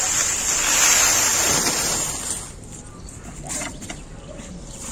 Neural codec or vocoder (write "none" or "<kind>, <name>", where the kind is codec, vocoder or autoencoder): none